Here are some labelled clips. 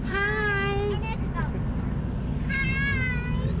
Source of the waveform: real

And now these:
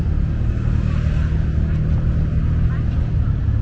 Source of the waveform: real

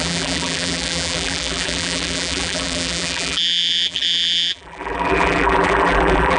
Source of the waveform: fake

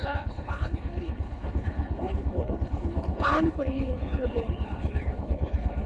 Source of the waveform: fake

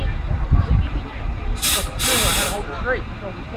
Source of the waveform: real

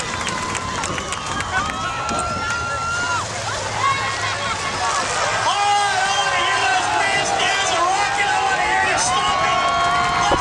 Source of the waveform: real